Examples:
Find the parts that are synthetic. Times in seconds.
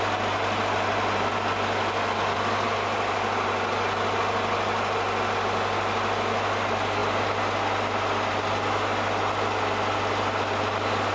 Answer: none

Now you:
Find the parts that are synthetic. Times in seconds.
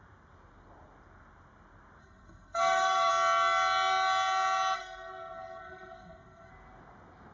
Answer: 2.0-3.1 (codec, SNAC); 4.8-6.5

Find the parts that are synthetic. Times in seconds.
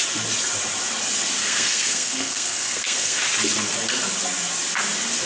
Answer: 1.4-3.2 (codec, SNAC)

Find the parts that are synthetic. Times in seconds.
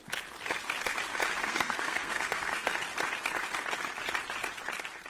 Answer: 1.4-2.7 (codec, SNAC)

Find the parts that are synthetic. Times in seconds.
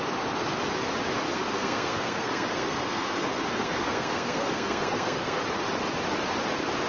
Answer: 1.3-5.4 (codec, SNAC)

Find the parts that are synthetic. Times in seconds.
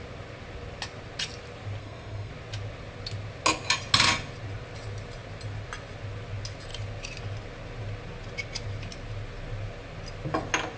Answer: 1.8-2.3 (codec, SNAC)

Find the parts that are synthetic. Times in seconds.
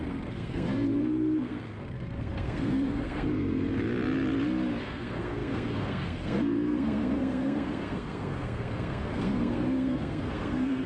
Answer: 0.0-3.8 (codec, SNAC); 4.8-10.9